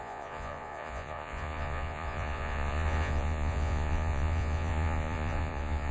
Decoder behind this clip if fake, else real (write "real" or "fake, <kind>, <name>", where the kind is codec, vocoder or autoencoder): fake, vocoder, Vocos